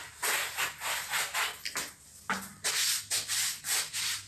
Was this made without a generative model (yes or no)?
yes